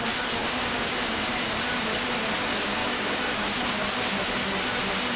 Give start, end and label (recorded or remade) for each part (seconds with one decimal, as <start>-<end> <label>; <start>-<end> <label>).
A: 0.0-0.4 recorded; 0.4-1.6 remade; 1.6-2.8 recorded; 2.8-4.2 remade; 4.2-5.2 recorded